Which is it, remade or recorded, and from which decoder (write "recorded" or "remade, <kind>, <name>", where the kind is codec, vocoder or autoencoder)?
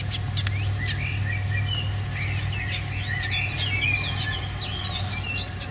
recorded